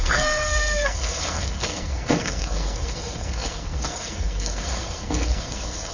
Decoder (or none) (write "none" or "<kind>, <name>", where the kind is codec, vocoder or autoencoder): codec, SNAC